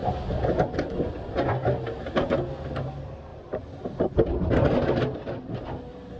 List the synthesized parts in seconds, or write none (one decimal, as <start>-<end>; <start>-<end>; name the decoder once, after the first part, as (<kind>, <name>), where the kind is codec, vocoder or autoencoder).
none